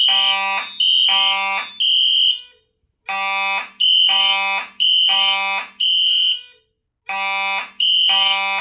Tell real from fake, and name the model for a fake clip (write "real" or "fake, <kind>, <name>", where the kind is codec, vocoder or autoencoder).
real